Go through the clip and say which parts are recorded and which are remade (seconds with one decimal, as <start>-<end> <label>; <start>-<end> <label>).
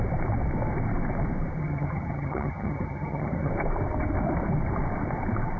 0.0-1.6 recorded; 1.6-3.5 remade; 3.5-5.6 recorded